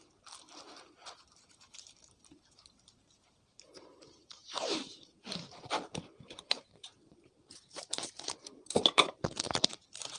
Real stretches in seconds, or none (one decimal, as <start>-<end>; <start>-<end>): 0.0-0.8